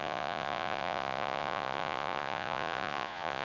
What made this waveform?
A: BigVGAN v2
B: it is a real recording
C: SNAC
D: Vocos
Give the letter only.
D